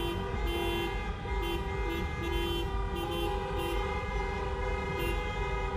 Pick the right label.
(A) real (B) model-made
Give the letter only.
A